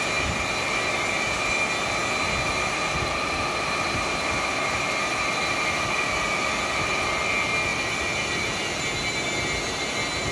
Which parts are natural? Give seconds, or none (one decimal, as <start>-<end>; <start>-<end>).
0.0-7.7; 8.7-10.3